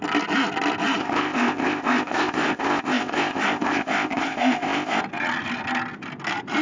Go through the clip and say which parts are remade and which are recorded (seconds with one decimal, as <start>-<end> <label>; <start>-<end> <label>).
0.0-1.0 recorded; 1.0-5.0 remade; 5.0-6.6 recorded